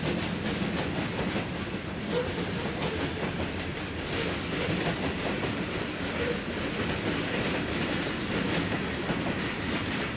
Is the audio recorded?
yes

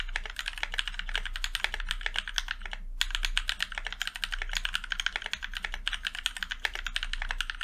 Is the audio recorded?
yes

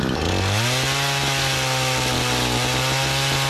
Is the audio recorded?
yes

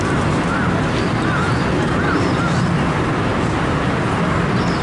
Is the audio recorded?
yes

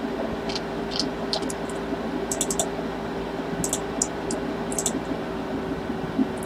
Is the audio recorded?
yes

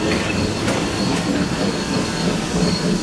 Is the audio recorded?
no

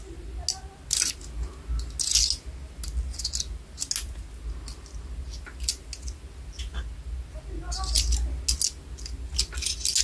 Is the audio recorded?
yes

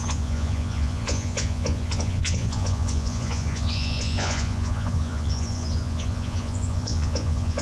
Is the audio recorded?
no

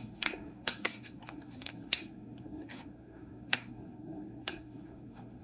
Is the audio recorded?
no